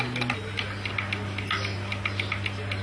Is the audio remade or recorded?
recorded